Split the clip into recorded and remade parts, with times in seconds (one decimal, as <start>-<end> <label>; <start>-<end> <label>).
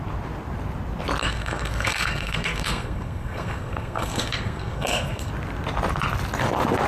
0.0-1.2 recorded; 1.2-5.3 remade; 5.3-6.9 recorded